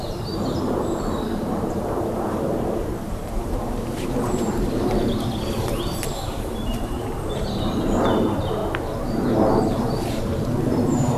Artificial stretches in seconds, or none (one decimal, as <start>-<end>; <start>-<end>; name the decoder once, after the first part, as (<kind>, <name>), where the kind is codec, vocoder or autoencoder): 0.0-8.6 (vocoder, BigVGAN v2); 9.8-11.2